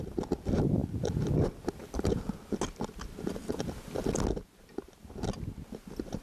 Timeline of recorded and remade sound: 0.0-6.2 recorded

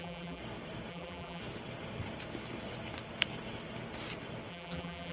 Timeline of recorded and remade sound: 0.0-0.4 remade; 0.4-0.9 recorded; 0.9-1.4 remade; 1.4-4.5 recorded; 4.5-5.1 remade

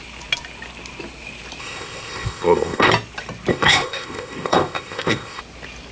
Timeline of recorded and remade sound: 0.0-1.6 recorded; 1.6-2.9 remade; 2.9-3.5 recorded; 3.5-5.4 remade; 5.4-5.9 recorded